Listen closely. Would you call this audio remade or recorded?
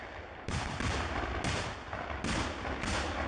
recorded